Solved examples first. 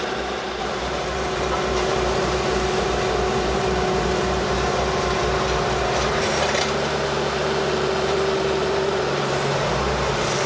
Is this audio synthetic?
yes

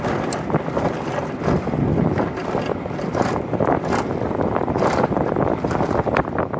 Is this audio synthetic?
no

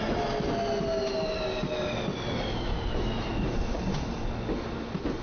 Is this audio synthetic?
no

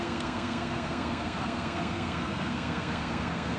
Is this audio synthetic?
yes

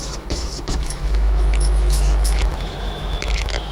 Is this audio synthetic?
yes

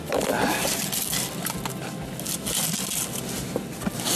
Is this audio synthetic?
no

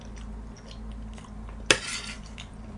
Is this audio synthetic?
no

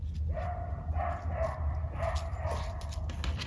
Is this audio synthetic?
no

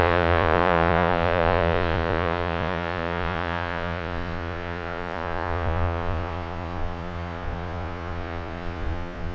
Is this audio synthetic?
yes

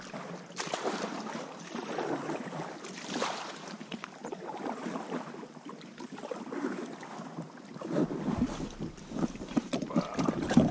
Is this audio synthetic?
yes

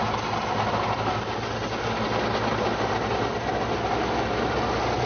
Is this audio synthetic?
no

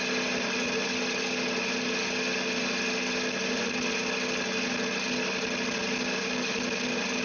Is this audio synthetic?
no